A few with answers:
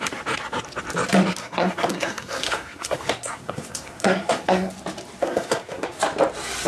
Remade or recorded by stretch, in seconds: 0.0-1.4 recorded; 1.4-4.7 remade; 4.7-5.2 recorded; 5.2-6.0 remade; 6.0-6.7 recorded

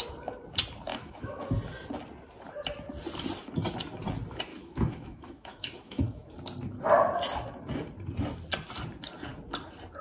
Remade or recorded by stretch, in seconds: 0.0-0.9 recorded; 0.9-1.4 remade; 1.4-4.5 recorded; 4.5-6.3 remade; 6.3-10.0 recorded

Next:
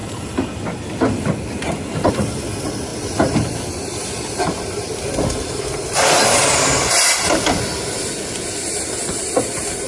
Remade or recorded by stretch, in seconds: 0.0-9.9 remade